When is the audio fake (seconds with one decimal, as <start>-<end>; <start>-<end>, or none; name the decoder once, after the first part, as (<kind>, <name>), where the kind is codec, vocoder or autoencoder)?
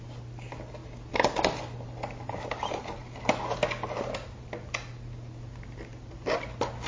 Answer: none